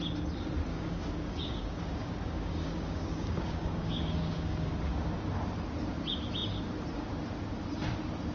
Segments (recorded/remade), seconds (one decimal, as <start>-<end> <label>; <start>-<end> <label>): 0.0-0.7 recorded; 0.7-4.7 remade; 4.7-8.3 recorded